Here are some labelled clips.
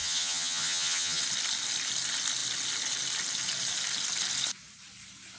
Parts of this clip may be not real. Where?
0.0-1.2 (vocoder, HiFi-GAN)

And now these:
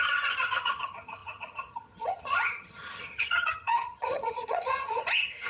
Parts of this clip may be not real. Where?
0.0-5.5 (vocoder, HiFi-GAN)

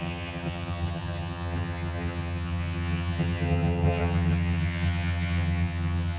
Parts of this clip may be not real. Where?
0.0-6.2 (vocoder, HiFi-GAN)

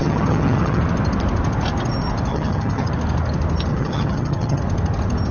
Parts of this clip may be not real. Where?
0.0-0.8 (vocoder, HiFi-GAN); 2.3-2.9; 3.7-4.6

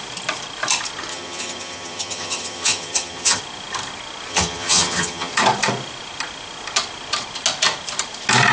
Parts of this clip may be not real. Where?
1.1-3.4 (vocoder, HiFi-GAN); 4.3-5.3

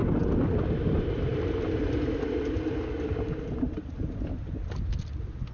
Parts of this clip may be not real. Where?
none

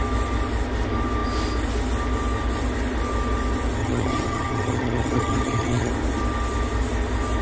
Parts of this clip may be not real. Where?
3.8-5.9 (vocoder, HiFi-GAN)

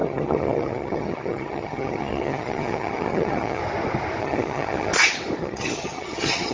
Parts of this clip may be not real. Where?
0.0-3.6 (vocoder, HiFi-GAN); 4.2-4.9; 5.4-6.5